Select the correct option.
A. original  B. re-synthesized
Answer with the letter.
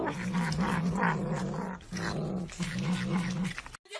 A